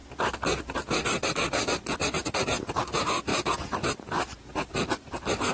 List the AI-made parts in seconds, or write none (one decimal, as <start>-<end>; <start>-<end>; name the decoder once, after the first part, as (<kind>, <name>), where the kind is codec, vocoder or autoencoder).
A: 0.6-5.5 (vocoder, BigVGAN v2)